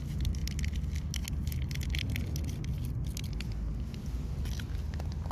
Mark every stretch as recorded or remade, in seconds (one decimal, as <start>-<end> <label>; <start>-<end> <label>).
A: 0.0-5.3 recorded